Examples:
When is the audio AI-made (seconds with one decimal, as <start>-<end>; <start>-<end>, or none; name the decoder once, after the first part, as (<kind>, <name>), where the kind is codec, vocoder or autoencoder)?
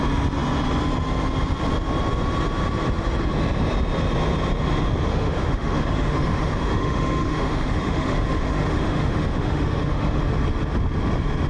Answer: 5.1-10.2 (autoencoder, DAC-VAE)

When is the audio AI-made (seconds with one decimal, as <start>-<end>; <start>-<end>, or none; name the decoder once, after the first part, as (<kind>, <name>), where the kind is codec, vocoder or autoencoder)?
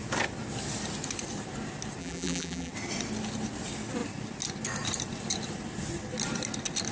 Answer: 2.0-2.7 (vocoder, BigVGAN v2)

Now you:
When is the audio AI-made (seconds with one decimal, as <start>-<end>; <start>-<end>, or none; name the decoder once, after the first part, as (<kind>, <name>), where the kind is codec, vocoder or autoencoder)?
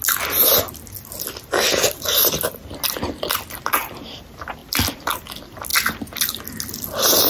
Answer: 4.6-5.1 (vocoder, BigVGAN v2)